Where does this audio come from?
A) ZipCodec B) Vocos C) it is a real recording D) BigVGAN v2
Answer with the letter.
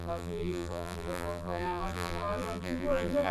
D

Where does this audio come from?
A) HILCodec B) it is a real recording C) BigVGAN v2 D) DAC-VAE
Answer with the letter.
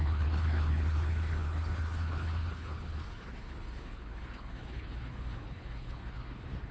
A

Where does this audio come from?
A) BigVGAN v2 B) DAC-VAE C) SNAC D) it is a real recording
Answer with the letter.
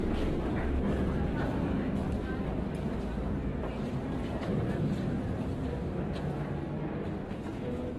D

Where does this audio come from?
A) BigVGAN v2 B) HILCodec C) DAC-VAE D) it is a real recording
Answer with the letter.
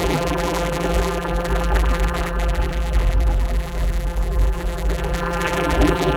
A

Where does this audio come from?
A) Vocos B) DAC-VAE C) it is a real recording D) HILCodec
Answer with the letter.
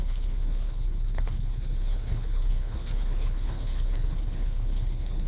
D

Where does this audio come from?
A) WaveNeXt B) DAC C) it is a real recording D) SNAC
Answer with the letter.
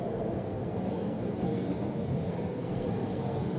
D